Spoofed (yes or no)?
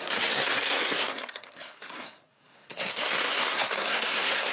yes